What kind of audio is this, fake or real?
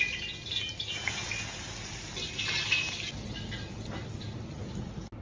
real